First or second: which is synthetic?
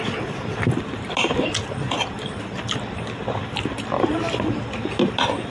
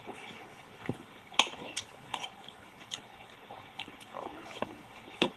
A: second